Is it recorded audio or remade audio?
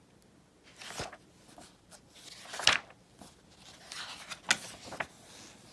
recorded